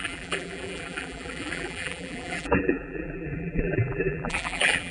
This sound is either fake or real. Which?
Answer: fake